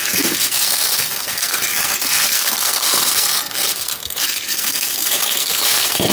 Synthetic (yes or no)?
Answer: yes